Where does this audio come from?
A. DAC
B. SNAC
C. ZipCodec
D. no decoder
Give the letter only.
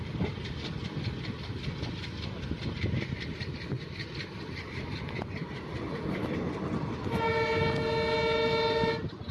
D